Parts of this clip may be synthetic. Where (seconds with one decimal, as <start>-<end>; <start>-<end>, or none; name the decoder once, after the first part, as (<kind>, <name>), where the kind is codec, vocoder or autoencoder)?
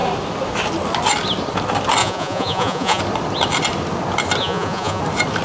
2.0-3.0 (vocoder, Vocos); 4.4-5.0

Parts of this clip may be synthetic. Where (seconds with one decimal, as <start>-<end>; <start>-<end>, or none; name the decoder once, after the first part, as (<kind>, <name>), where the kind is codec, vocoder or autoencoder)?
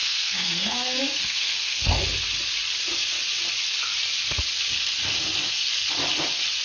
0.0-2.0 (codec, SNAC)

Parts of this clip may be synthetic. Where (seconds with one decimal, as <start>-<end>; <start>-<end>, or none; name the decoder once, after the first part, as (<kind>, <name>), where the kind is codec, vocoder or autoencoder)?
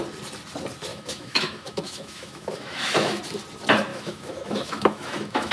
0.9-3.2 (autoencoder, DAC-VAE); 3.9-5.5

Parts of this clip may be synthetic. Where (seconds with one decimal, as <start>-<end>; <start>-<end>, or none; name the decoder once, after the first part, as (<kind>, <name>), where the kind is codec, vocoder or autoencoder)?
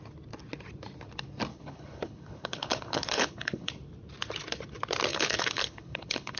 1.5-3.7 (codec, HILCodec); 5.1-6.4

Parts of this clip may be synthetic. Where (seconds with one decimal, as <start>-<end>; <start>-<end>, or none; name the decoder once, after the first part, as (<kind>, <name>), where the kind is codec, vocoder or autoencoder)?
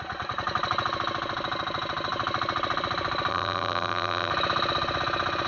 3.3-4.3 (vocoder, BigVGAN v2)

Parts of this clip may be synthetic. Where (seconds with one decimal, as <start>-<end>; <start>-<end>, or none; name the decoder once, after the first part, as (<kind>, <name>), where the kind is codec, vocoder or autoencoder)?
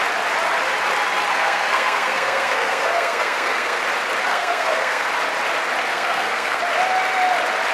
1.3-3.8 (codec, SNAC); 4.3-5.1; 5.9-6.6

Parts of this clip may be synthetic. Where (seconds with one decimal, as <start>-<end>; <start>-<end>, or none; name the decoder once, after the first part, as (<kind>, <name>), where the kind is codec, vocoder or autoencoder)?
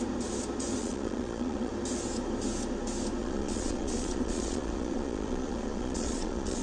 0.8-1.7 (vocoder, Vocos); 3.2-6.6